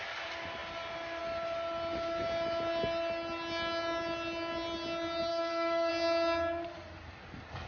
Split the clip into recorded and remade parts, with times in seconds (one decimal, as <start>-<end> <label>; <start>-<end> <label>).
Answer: 0.0-5.3 recorded; 5.3-5.9 remade; 5.9-7.7 recorded